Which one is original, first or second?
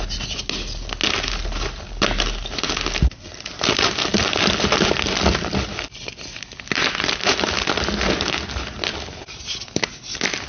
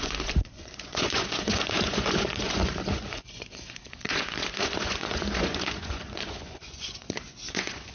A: first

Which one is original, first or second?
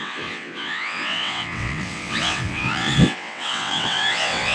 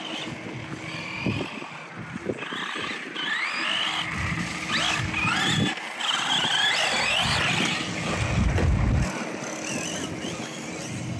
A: second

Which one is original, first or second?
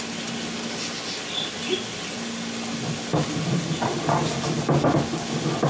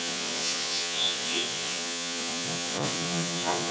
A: first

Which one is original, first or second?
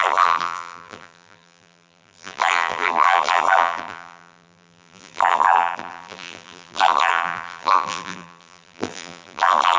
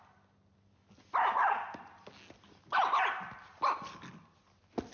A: second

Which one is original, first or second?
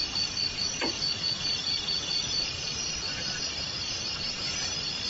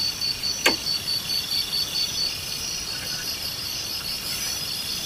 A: second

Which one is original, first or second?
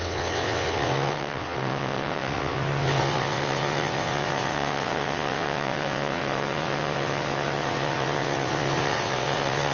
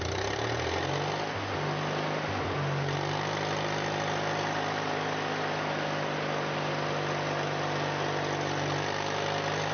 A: second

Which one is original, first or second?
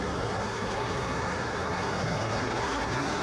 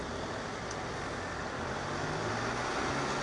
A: second